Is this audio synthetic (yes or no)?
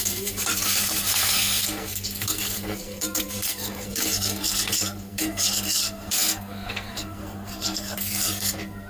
yes